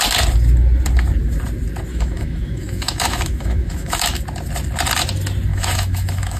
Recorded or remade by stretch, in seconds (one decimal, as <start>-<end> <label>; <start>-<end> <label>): 0.0-1.9 recorded; 1.9-4.2 remade; 4.2-5.5 recorded; 5.5-6.4 remade